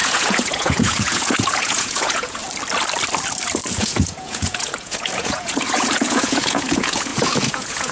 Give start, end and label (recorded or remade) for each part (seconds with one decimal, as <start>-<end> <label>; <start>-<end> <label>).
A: 0.0-2.4 remade; 2.4-3.7 recorded; 3.7-7.9 remade